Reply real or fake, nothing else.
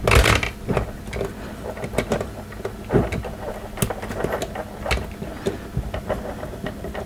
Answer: real